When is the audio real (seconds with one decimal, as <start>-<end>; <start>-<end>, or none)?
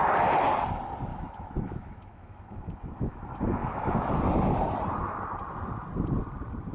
0.0-1.1; 3.2-3.6; 4.2-6.7